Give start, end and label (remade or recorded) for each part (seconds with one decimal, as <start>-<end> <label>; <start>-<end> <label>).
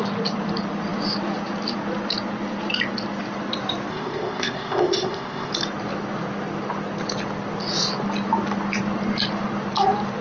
0.0-3.9 recorded; 3.9-5.5 remade; 5.5-10.2 recorded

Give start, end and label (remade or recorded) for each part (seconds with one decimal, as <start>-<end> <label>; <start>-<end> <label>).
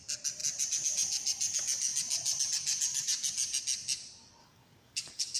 0.0-4.4 recorded; 4.4-5.4 remade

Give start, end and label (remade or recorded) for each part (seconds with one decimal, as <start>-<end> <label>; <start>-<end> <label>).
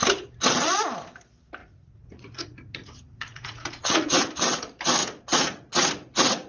0.0-1.6 recorded; 1.6-4.3 remade; 4.3-5.0 recorded; 5.0-6.5 remade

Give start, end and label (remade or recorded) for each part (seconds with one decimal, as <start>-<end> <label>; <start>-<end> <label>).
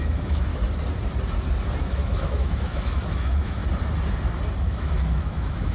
0.0-0.5 remade; 0.5-1.8 recorded; 1.8-3.6 remade; 3.6-4.6 recorded; 4.6-5.7 remade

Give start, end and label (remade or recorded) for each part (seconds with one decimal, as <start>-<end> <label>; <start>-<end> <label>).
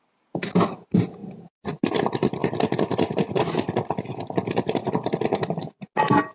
0.0-6.3 recorded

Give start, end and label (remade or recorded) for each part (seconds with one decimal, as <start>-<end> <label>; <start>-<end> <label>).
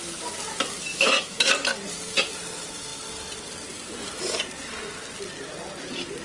0.0-0.9 recorded; 0.9-1.5 remade; 1.5-6.2 recorded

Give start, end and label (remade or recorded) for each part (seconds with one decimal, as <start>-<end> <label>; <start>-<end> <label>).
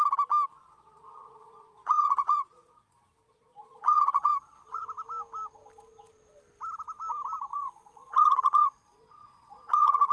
0.0-0.5 recorded; 0.5-4.8 remade; 4.8-7.5 recorded; 7.5-10.1 remade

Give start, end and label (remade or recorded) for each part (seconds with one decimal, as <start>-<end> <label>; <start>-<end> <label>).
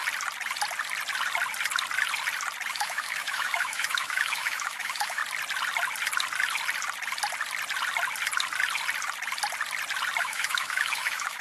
0.0-2.7 recorded; 2.7-5.2 remade; 5.2-10.2 recorded; 10.2-11.4 remade